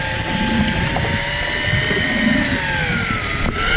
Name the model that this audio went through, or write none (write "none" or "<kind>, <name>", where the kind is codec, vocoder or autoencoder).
none